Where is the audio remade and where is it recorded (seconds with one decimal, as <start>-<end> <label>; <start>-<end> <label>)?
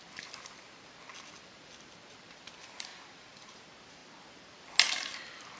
0.0-2.9 recorded; 2.9-3.6 remade; 3.6-5.6 recorded